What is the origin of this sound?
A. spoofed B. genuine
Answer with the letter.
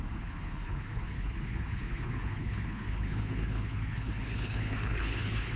A